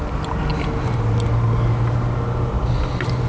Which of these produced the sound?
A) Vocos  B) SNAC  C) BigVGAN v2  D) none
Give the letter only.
D